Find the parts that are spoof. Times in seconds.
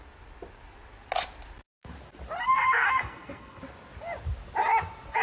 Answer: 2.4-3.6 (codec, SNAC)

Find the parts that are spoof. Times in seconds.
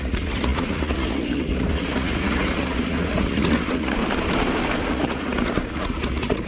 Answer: 0.0-4.0 (vocoder, Vocos); 4.8-6.5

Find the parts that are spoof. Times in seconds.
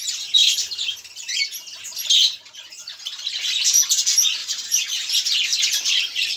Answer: 0.4-1.4 (vocoder, BigVGAN v2); 4.4-5.1; 5.5-6.4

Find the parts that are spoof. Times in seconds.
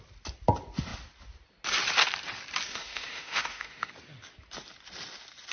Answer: 2.7-3.9 (autoencoder, DAC-VAE)